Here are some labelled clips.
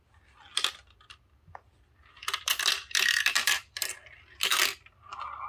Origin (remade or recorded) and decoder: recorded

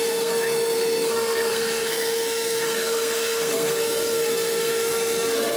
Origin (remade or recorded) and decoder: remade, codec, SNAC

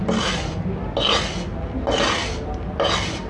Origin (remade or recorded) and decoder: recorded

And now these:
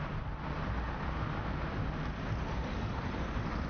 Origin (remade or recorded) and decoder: recorded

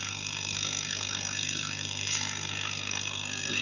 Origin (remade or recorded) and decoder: remade, codec, SNAC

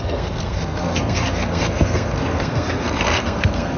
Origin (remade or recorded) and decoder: remade, codec, SNAC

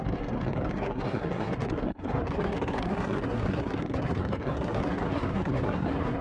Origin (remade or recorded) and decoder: remade, codec, SNAC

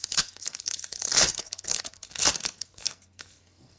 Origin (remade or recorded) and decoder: remade, codec, SNAC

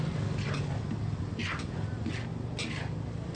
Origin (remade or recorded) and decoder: recorded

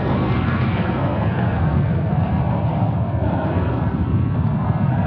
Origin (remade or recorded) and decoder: remade, codec, SNAC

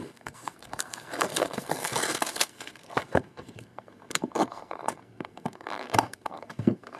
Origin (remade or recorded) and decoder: remade, codec, SNAC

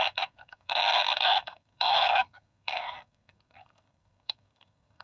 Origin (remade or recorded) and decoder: remade, codec, SNAC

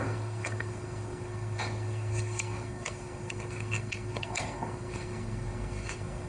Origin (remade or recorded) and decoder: remade, codec, SNAC